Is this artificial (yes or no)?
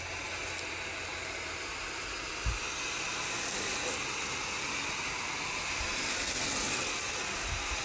no